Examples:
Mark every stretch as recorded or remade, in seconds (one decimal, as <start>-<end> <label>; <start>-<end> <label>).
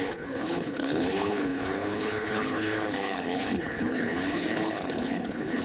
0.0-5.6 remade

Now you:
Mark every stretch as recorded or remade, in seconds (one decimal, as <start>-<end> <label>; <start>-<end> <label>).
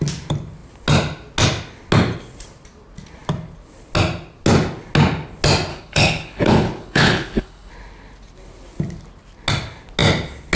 0.0-5.7 recorded; 5.7-7.7 remade; 7.7-10.6 recorded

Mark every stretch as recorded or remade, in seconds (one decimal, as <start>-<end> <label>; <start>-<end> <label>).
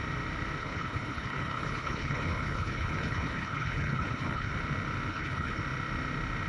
0.0-0.6 recorded; 0.6-4.5 remade; 4.5-5.1 recorded; 5.1-5.6 remade; 5.6-6.5 recorded